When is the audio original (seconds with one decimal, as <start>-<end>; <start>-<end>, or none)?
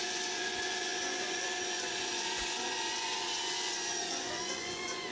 none